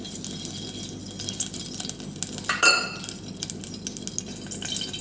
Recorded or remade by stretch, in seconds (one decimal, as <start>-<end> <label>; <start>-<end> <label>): 0.0-5.0 recorded